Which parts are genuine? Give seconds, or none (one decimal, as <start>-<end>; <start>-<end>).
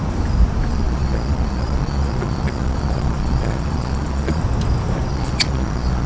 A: 0.0-0.7; 4.4-5.1